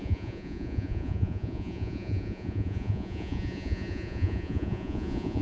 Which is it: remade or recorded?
remade